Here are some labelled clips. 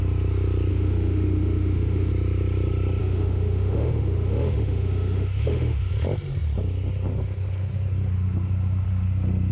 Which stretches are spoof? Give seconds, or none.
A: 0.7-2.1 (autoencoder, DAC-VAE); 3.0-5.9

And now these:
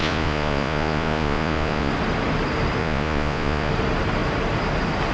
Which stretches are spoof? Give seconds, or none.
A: 0.0-1.9 (vocoder, Vocos); 2.8-3.7

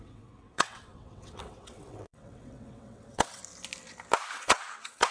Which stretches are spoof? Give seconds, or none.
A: 0.0-3.4 (vocoder, WaveNeXt); 4.3-5.1